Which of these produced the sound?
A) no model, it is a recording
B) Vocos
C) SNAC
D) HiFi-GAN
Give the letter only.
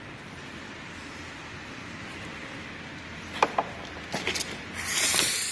A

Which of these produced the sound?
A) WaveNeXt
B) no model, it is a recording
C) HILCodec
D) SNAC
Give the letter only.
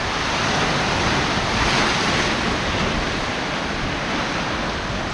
B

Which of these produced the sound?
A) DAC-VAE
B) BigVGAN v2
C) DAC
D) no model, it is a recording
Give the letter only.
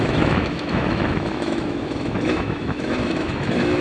A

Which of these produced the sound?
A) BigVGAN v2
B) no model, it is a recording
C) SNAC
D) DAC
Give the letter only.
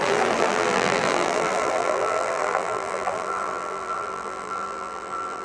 A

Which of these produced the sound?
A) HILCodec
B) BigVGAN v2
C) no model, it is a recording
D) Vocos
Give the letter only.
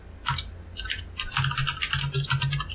C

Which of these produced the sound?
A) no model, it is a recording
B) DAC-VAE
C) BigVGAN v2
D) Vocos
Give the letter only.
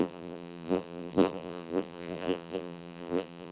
C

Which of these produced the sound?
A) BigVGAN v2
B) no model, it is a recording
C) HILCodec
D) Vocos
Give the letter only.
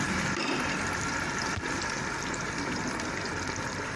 A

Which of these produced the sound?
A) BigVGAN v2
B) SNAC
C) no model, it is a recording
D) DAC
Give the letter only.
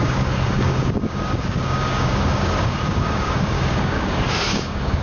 D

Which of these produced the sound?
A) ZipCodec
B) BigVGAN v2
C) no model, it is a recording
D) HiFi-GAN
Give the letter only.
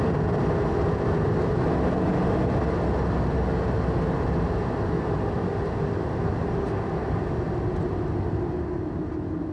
C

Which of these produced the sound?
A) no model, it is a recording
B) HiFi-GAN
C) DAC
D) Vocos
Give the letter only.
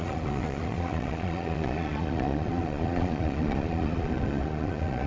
D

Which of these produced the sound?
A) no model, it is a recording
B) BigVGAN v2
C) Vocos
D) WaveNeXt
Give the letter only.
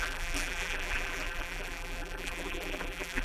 B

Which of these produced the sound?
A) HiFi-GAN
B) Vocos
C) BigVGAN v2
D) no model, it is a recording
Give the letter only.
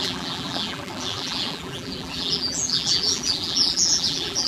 C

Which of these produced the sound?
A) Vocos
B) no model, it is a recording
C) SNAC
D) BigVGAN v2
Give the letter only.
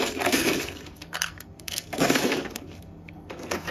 C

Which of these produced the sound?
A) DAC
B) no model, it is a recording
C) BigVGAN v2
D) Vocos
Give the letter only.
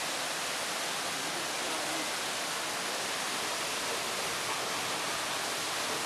B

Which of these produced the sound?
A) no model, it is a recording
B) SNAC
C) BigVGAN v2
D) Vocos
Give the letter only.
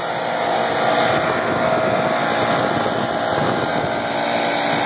A